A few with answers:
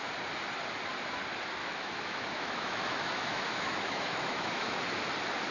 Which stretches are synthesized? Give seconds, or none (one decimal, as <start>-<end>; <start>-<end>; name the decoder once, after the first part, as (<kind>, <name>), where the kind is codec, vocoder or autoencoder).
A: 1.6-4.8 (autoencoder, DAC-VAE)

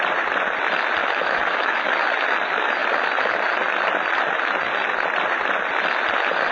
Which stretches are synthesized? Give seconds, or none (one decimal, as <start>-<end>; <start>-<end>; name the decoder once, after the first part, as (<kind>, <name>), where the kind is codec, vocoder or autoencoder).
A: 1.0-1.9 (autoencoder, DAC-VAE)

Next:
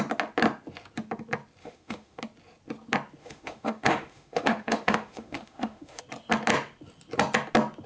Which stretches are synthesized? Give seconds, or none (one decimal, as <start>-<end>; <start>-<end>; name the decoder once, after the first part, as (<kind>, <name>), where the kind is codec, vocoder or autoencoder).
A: 1.6-2.2 (autoencoder, DAC-VAE); 3.2-6.0